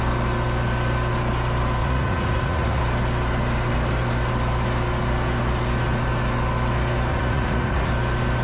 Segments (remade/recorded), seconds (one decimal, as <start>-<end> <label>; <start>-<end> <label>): 0.0-1.8 recorded; 1.8-2.8 remade; 2.8-7.1 recorded; 7.1-7.9 remade; 7.9-8.4 recorded

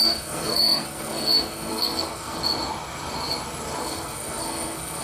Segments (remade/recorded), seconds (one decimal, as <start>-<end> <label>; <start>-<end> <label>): 0.0-2.4 remade; 2.4-3.8 recorded; 3.8-5.0 remade

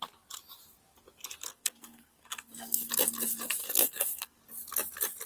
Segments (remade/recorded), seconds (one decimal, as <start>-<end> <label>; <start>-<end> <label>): 0.0-1.5 recorded; 1.5-2.9 remade; 2.9-3.6 recorded; 3.6-4.4 remade; 4.4-5.3 recorded

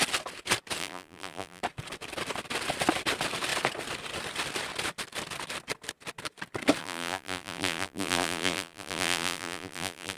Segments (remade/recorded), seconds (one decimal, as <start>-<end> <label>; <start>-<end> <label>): 0.0-0.8 recorded; 0.8-1.6 remade; 1.6-6.8 recorded; 6.8-10.2 remade

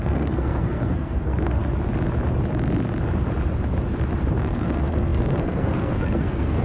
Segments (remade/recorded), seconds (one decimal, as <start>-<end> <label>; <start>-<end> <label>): 0.0-1.6 remade; 1.6-4.4 recorded; 4.4-6.6 remade

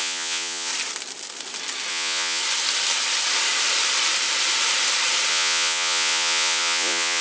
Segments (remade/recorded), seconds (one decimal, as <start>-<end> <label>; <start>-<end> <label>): 0.0-0.7 remade; 0.7-1.9 recorded; 1.9-2.4 remade; 2.4-5.3 recorded; 5.3-7.2 remade